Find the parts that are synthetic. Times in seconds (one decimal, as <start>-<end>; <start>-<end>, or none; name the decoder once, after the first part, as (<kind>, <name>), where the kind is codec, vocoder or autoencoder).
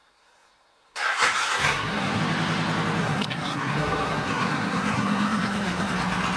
0.0-2.2 (codec, SNAC); 3.0-5.9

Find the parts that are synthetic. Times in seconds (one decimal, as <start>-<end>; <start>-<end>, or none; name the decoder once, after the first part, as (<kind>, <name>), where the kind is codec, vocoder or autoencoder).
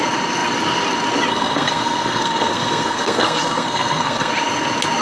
1.3-4.3 (codec, SNAC)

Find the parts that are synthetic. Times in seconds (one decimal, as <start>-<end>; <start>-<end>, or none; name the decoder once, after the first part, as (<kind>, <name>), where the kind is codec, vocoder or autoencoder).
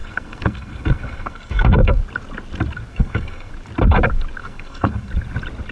0.0-2.0 (codec, SNAC); 2.9-3.5; 4.4-5.1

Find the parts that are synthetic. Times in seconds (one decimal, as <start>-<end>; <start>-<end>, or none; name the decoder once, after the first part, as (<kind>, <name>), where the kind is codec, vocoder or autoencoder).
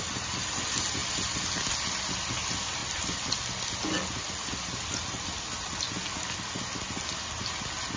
none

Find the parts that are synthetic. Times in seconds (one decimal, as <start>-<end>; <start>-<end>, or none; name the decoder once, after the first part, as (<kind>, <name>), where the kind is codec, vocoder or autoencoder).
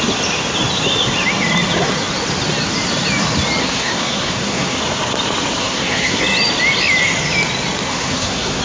3.6-4.8 (codec, SNAC); 5.6-6.2; 7.9-8.6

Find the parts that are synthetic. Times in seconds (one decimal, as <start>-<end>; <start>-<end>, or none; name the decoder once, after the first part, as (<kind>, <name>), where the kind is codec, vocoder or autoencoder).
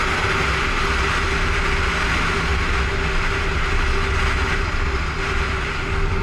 none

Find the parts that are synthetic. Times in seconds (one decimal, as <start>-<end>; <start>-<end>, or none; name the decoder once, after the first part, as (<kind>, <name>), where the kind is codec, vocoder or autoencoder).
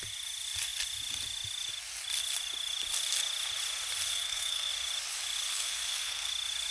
4.1-4.7 (codec, SNAC); 5.5-6.3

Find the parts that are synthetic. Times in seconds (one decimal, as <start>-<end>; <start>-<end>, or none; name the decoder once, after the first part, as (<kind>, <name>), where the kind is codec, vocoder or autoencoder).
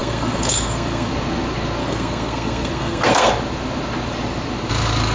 0.0-1.1 (codec, SNAC); 1.8-3.3